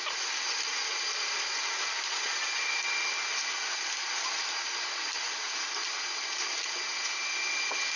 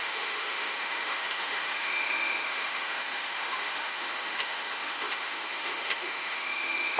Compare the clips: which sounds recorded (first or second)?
first